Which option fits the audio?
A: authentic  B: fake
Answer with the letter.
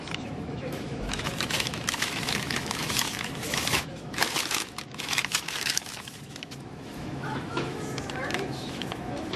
B